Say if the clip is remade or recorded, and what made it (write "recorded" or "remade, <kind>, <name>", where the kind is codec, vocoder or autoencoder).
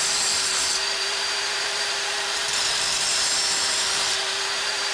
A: remade, vocoder, BigVGAN v2